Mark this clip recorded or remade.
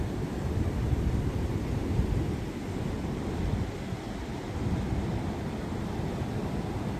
recorded